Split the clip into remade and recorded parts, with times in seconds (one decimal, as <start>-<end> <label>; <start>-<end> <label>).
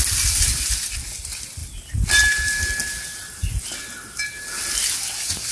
0.0-5.5 recorded